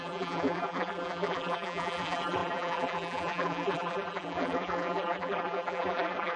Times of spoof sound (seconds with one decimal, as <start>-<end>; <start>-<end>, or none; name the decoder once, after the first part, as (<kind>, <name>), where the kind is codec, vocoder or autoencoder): 0.0-6.4 (vocoder, BigVGAN v2)